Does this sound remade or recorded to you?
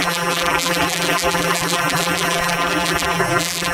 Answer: remade